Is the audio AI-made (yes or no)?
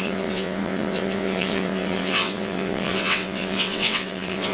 yes